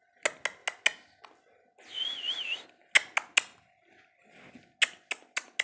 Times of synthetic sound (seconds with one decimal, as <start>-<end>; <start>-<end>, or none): none